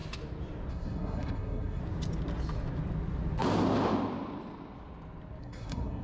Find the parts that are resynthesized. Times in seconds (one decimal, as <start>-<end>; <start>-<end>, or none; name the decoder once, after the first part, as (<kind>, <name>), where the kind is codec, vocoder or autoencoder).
0.7-1.8 (codec, SNAC); 5.4-6.0